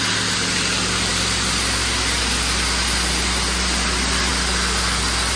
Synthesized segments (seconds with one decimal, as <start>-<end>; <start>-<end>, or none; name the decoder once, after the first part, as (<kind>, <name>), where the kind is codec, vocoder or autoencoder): none